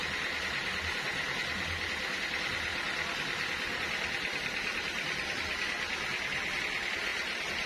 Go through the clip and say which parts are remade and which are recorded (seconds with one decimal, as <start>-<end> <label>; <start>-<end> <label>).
0.0-7.7 recorded